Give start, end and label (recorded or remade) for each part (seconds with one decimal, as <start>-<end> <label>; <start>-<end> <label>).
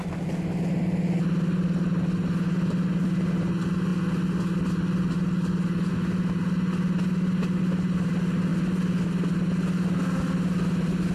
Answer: 0.0-11.1 recorded